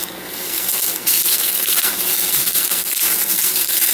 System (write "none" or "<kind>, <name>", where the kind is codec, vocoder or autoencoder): codec, SNAC